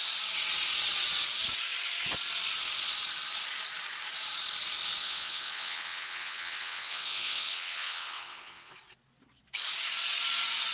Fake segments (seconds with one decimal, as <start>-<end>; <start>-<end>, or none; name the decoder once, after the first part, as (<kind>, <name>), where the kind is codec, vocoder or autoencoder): 5.0-8.7 (vocoder, WaveNeXt)